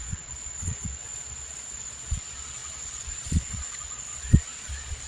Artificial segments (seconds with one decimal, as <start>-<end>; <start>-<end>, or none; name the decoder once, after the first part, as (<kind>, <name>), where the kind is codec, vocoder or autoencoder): 0.0-5.1 (vocoder, Vocos)